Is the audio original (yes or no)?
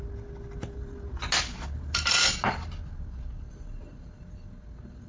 yes